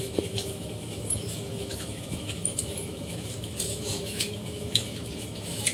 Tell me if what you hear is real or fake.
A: fake